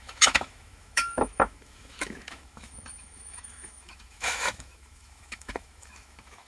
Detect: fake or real fake